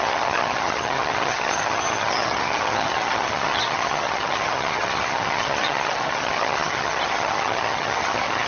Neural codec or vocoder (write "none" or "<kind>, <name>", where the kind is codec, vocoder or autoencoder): vocoder, HiFi-GAN